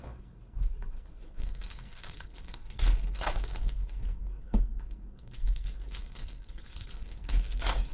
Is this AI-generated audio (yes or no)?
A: yes